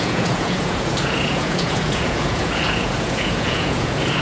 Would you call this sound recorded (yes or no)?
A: no